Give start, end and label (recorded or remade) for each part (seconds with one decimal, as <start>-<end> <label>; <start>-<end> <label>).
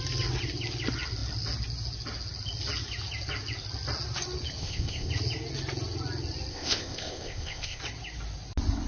0.0-4.6 recorded; 4.6-5.1 remade; 5.1-6.5 recorded; 6.5-7.8 remade; 7.8-8.9 recorded